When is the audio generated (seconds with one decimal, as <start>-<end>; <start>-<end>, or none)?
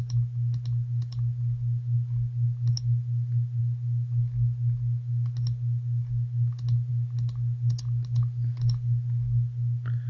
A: none